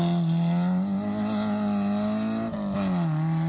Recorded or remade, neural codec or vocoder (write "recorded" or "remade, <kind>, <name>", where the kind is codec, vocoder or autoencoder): recorded